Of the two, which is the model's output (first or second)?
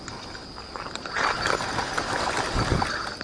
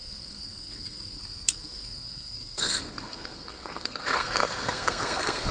second